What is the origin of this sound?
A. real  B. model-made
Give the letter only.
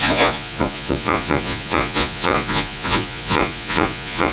B